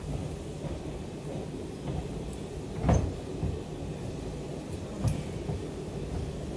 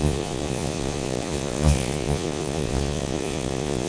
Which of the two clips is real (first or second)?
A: first